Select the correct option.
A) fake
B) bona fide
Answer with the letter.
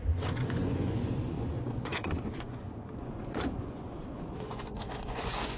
A